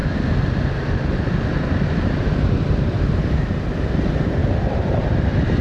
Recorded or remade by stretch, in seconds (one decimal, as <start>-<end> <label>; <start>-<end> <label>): 0.0-4.4 recorded; 4.4-5.6 remade